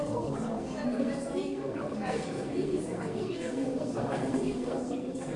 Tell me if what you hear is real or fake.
fake